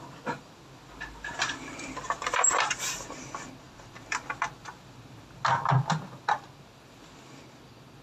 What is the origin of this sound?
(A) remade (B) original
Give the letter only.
B